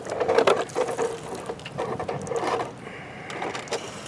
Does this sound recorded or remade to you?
recorded